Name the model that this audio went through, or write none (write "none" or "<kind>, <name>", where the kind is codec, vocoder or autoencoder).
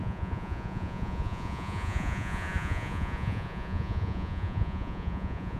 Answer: vocoder, Vocos